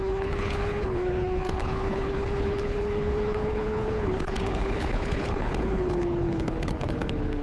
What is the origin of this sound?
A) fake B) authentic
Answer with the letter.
A